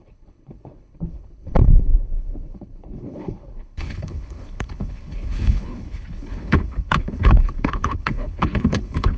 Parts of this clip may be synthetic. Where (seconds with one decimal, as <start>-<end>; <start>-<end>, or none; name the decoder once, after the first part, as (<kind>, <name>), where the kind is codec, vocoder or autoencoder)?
0.0-9.2 (codec, HILCodec)